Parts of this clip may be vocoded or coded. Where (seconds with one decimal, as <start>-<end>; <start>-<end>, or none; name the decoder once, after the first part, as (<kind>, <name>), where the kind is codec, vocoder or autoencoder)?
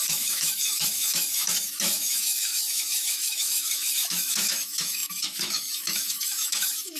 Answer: 0.0-7.0 (autoencoder, DAC-VAE)